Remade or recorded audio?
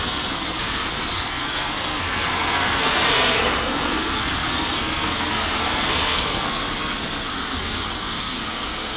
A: remade